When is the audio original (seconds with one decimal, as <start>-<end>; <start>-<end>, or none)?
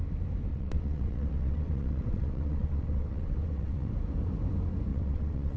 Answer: 0.0-0.5; 3.9-4.9